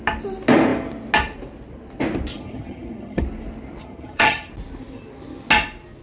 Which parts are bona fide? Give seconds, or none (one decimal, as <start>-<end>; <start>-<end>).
0.0-2.3; 3.2-3.8; 4.5-6.0